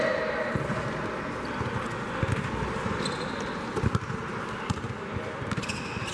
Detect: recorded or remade recorded